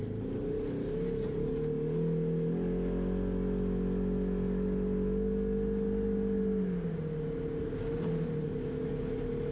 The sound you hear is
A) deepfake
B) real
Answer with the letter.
B